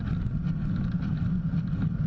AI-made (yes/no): no